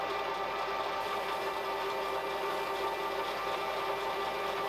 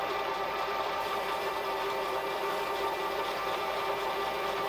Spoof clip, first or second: second